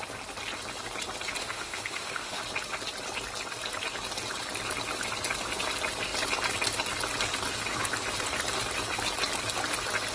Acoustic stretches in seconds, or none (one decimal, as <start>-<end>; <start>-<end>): 0.0-1.4; 2.4-10.1